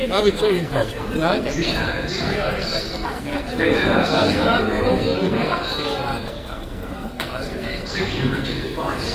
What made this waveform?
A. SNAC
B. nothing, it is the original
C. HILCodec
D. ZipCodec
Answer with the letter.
A